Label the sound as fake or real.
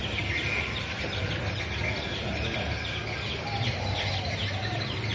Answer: real